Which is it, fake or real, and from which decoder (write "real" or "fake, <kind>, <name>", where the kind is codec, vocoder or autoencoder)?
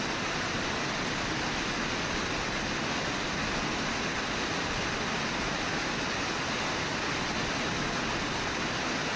real